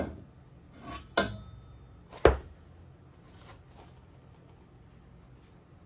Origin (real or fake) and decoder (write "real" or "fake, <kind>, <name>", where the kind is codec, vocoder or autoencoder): real